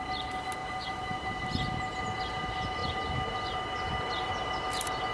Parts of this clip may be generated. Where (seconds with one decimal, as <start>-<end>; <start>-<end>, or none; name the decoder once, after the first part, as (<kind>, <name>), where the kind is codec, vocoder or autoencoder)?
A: 0.6-1.4 (vocoder, BigVGAN v2); 2.8-4.3